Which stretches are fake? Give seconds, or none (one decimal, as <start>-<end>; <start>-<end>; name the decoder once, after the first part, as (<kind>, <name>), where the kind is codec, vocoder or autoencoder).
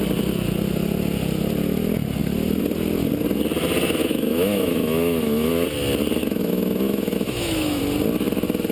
4.0-5.5 (autoencoder, DAC-VAE); 6.2-7.8